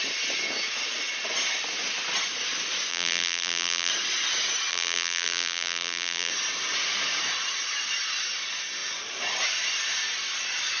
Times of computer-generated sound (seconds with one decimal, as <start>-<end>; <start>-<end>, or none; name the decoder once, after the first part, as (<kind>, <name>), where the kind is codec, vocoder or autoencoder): 2.9-3.9 (vocoder, BigVGAN v2); 4.7-6.3